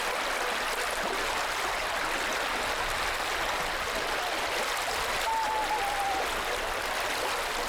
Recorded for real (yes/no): yes